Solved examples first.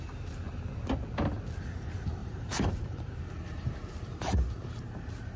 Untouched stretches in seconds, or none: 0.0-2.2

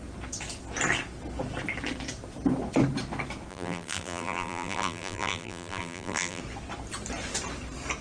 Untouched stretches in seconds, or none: 0.0-3.5; 6.4-8.0

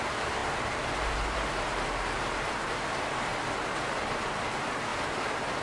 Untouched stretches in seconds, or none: 3.3-4.4; 4.9-5.6

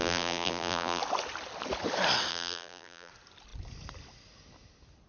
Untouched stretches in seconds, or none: 1.0-2.3; 3.1-5.1

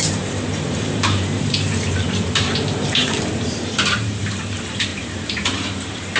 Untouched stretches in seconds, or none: none